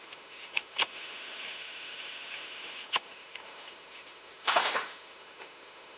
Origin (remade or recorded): remade